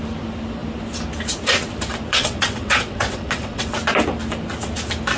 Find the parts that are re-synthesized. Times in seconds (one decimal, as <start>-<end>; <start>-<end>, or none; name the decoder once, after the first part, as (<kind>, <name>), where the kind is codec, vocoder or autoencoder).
2.1-3.7 (vocoder, WaveNeXt)